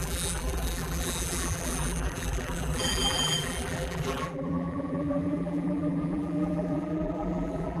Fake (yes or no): yes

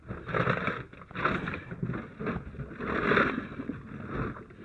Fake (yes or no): no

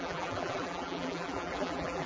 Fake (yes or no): yes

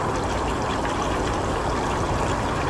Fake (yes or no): no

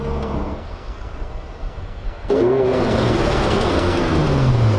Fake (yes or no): yes